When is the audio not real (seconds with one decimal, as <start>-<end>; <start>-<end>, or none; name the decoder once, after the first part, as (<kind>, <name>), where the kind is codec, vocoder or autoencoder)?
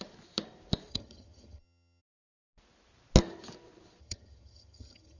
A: 0.9-2.0 (vocoder, HiFi-GAN); 4.0-5.2